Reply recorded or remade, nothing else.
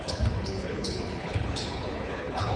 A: remade